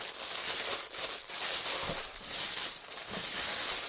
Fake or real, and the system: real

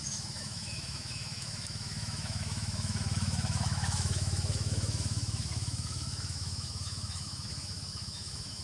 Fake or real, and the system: fake, autoencoder, DAC-VAE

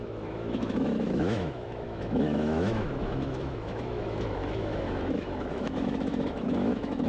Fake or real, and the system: fake, autoencoder, DAC-VAE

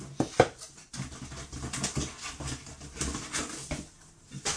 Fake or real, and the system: real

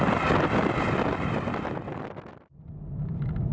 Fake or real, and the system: real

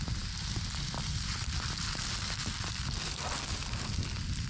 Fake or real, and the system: real